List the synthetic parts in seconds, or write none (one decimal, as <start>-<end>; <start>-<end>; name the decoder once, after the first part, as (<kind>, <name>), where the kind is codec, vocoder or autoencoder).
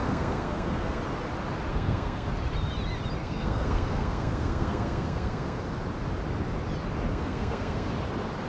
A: 0.0-1.0 (codec, SNAC); 1.7-2.3; 3.2-5.6; 7.1-7.9